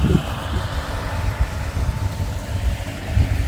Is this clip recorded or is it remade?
recorded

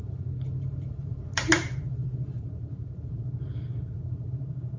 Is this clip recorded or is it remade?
remade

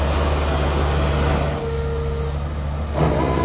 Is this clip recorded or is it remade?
recorded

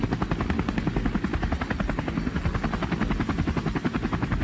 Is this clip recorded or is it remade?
recorded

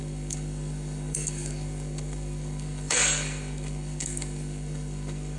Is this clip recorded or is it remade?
remade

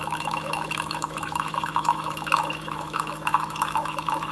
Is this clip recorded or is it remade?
remade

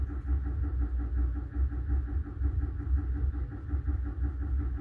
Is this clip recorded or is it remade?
recorded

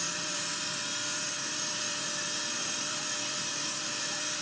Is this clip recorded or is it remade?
remade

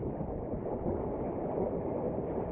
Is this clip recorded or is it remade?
recorded